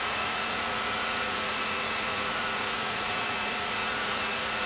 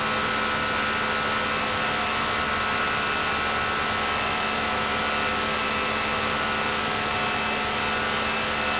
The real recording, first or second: second